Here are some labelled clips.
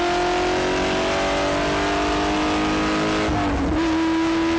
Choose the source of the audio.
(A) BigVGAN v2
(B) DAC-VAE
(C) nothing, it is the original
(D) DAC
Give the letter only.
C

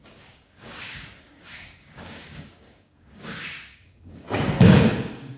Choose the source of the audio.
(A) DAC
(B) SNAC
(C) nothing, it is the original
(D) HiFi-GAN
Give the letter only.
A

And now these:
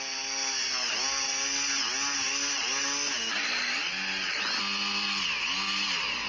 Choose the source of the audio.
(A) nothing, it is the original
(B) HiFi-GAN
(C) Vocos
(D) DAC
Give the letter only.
A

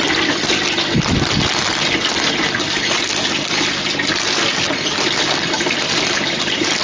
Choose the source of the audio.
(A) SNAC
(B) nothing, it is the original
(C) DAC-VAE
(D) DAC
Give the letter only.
B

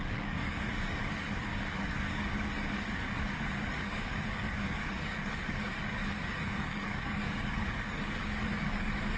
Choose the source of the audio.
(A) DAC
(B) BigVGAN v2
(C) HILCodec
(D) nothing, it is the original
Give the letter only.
A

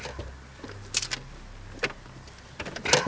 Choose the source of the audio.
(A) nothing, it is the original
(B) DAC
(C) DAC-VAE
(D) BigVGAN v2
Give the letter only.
A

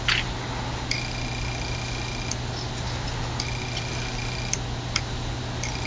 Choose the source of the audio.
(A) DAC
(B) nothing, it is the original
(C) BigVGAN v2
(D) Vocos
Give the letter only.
B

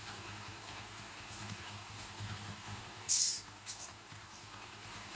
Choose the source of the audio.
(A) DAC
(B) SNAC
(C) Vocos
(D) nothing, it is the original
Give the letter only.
A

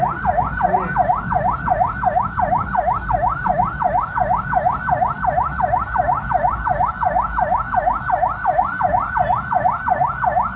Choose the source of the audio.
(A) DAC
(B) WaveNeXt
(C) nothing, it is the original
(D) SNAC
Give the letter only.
C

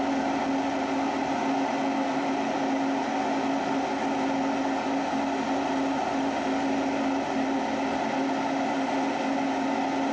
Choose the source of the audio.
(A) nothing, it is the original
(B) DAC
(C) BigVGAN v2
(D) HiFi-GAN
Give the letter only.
A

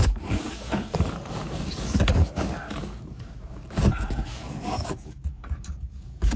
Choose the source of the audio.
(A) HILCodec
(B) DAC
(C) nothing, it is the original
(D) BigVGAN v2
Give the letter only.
B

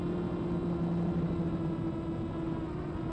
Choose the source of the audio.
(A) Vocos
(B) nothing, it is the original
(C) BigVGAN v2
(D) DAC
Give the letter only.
B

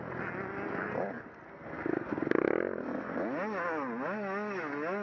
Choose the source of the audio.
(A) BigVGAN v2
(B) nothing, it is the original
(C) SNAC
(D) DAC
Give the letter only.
B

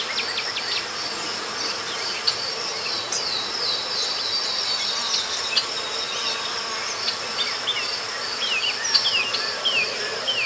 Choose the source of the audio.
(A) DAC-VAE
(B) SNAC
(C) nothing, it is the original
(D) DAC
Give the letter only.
C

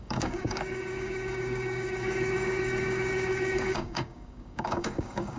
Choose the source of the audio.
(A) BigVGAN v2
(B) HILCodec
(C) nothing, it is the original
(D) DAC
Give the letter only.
D